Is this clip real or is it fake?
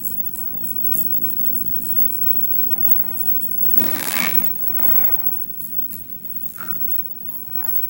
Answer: fake